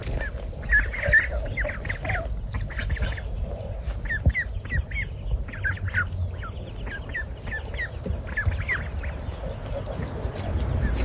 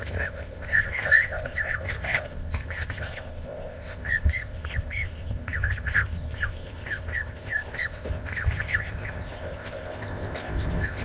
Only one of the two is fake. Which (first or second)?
second